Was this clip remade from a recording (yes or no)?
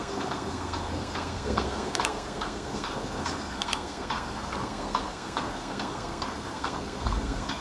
yes